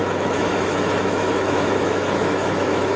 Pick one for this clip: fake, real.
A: fake